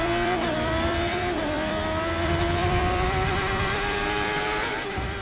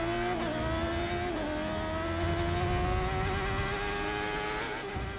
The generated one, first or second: first